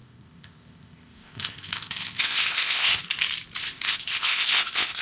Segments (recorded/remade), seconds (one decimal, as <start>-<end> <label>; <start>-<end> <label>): 0.0-3.0 remade; 3.0-3.6 recorded; 3.6-5.0 remade